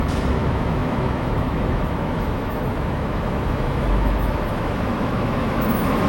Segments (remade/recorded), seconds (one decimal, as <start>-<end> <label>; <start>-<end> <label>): 0.0-6.1 remade